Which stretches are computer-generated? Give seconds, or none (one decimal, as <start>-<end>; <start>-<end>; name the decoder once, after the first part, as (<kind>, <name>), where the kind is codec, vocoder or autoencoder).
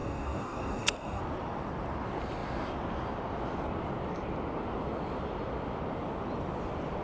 0.0-1.2 (codec, DAC)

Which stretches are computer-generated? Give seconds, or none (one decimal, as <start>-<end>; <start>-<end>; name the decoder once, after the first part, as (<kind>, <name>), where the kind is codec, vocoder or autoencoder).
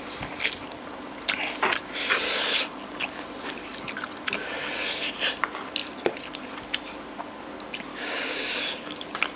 7.9-9.0 (codec, DAC)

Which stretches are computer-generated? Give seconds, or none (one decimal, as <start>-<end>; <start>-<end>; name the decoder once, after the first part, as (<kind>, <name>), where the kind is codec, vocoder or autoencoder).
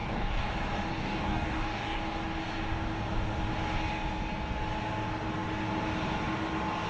0.0-0.5 (codec, DAC); 0.9-2.0